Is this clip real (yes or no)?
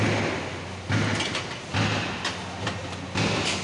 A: yes